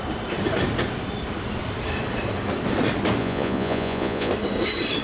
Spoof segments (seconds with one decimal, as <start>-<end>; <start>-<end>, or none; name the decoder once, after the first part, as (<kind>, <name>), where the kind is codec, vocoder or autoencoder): 3.2-4.3 (vocoder, Vocos)